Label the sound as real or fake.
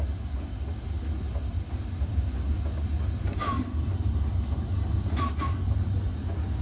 real